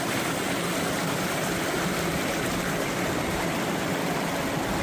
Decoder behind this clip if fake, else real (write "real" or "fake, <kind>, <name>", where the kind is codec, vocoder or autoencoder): real